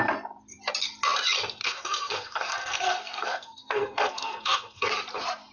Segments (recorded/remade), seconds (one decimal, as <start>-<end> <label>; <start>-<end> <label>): 0.0-1.6 recorded; 1.6-4.9 remade; 4.9-5.5 recorded